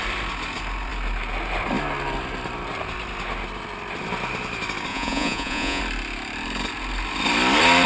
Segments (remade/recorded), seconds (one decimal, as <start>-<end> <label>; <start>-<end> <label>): 0.0-4.9 recorded; 4.9-5.8 remade; 5.8-7.9 recorded